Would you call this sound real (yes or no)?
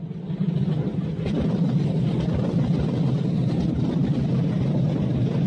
yes